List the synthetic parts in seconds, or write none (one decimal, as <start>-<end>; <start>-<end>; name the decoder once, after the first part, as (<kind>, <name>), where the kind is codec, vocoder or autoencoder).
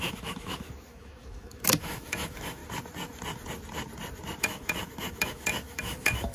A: 0.0-2.6 (autoencoder, DAC-VAE); 4.4-6.3